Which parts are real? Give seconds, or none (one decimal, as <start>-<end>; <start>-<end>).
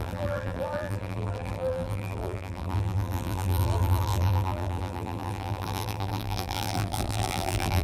none